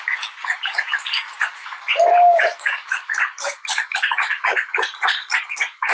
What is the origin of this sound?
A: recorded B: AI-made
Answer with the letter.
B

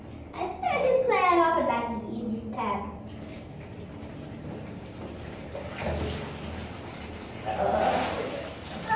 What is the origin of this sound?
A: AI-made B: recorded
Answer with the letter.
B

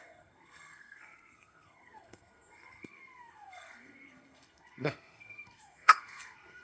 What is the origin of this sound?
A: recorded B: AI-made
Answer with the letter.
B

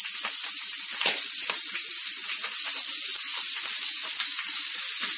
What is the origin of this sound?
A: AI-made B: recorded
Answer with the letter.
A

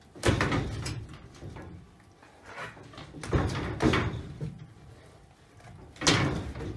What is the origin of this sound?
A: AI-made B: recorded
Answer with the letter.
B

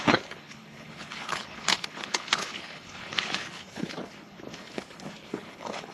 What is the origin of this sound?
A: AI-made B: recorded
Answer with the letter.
A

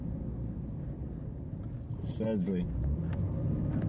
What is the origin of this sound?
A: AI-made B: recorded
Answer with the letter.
B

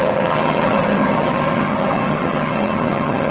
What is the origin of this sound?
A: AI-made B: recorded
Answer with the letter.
A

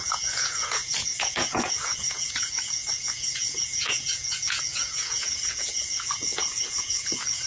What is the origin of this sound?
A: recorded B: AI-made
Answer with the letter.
B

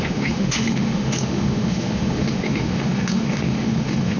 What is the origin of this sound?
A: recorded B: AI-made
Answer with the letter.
B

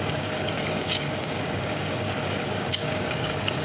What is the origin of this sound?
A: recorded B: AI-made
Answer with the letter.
B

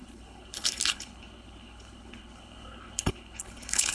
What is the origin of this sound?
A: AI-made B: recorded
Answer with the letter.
A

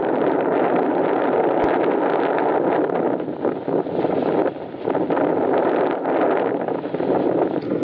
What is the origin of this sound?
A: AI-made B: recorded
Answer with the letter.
B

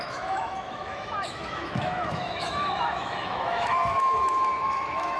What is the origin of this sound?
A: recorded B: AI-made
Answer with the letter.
B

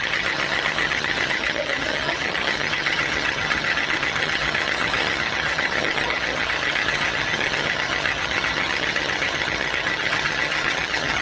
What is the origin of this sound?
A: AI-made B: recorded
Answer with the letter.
A